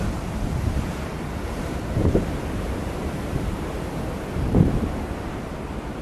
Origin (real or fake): fake